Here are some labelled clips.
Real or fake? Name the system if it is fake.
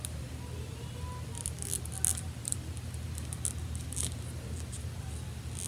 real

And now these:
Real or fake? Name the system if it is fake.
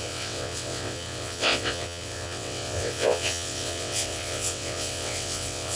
fake, vocoder, WaveNeXt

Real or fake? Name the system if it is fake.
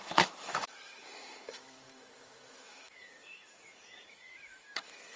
fake, autoencoder, DAC-VAE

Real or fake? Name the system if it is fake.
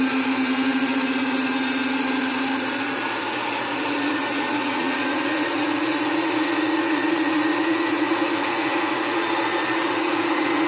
fake, vocoder, Vocos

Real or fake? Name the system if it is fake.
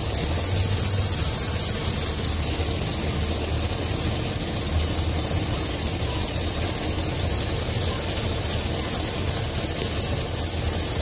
real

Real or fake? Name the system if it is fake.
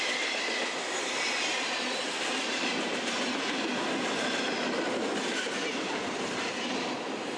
real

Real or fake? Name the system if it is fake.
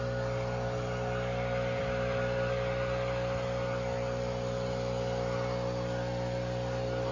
real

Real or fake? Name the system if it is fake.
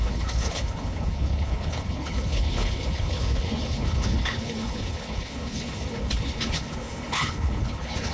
fake, codec, HILCodec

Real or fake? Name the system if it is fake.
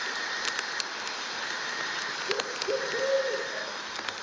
real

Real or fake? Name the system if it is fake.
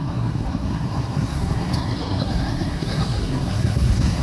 fake, codec, SNAC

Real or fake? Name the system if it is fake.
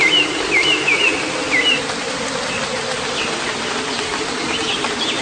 real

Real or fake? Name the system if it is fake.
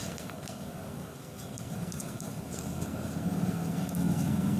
fake, codec, SNAC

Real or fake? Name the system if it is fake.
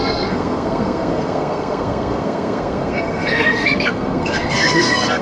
fake, codec, SNAC